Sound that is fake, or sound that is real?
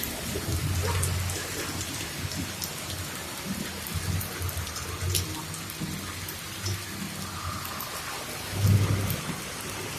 real